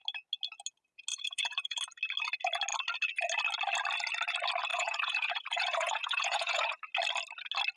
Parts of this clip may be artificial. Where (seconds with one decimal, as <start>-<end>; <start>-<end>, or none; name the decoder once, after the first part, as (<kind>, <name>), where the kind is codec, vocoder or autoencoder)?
1.1-1.8 (vocoder, Vocos); 4.7-6.8